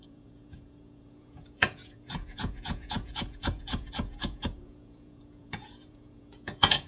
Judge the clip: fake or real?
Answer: fake